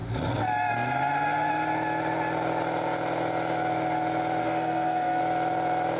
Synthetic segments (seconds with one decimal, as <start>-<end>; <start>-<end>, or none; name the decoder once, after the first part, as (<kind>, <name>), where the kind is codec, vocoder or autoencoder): 4.4-5.2 (codec, SNAC)